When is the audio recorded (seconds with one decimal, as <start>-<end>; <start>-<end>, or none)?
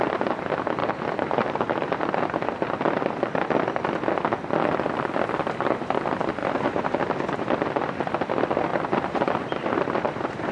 0.0-0.8; 2.0-6.4; 7.4-8.7